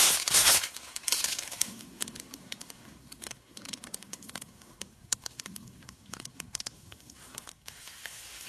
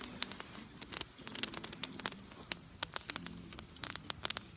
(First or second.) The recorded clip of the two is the second